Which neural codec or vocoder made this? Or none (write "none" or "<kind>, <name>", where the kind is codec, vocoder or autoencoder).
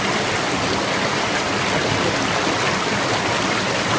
none